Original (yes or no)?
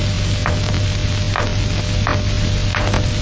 yes